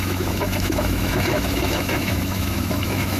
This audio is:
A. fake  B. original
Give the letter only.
A